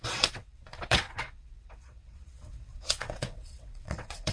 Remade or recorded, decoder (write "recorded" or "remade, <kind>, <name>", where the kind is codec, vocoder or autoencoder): remade, vocoder, WaveNeXt